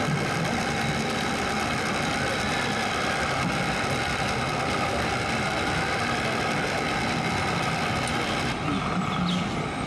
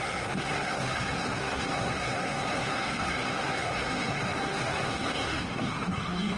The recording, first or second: first